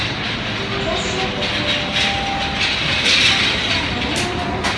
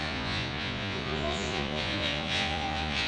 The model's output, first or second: second